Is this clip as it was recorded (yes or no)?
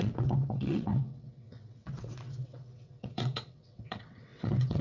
no